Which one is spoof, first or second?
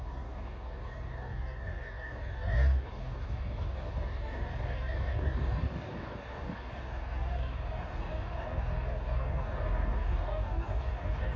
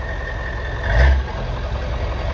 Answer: first